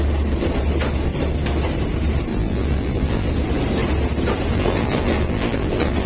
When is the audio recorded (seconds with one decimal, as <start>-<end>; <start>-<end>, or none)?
0.0-2.3; 3.3-4.5